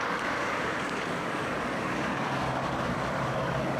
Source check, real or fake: fake